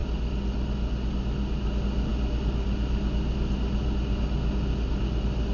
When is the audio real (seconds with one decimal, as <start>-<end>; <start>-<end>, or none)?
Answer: 0.0-5.5